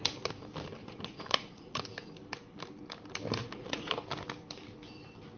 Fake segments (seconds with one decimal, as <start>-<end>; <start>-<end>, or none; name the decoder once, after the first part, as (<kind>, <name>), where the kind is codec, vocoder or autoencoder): 0.8-1.8 (vocoder, Vocos); 3.4-3.9